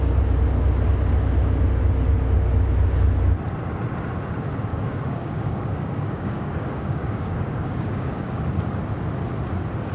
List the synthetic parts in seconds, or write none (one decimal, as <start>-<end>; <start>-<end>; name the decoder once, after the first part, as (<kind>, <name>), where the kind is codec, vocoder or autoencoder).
4.7-8.4 (codec, DAC)